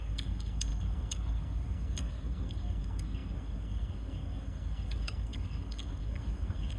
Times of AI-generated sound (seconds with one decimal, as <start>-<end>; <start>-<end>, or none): 0.0-6.8